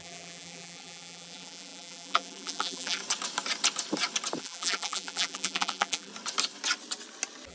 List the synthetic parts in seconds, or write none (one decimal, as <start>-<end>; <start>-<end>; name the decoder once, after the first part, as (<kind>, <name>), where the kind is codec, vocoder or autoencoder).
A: 0.0-3.0 (vocoder, BigVGAN v2); 4.4-6.1